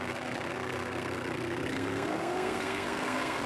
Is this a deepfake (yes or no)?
yes